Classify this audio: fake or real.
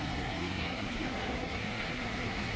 fake